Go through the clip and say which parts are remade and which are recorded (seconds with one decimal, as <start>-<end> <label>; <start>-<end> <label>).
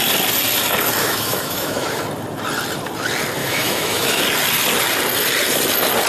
0.0-1.0 recorded; 1.0-2.0 remade; 2.0-3.4 recorded; 3.4-4.2 remade; 4.2-6.1 recorded